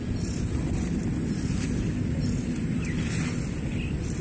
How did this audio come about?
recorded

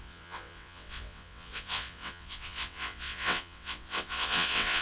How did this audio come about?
remade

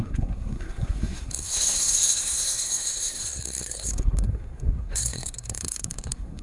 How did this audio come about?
remade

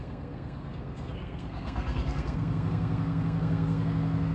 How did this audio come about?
remade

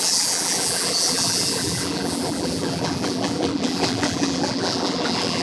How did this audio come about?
remade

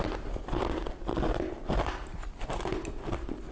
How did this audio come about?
recorded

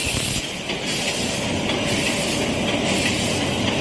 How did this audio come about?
recorded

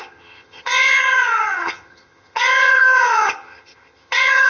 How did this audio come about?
remade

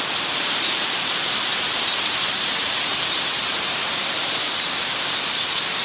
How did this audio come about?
remade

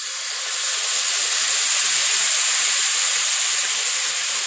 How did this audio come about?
recorded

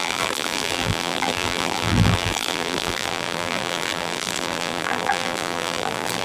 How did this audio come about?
remade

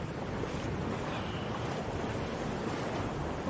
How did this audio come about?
recorded